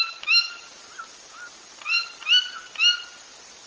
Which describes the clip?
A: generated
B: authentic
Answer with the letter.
B